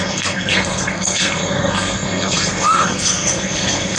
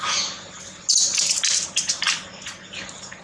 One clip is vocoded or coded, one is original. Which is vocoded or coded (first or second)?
first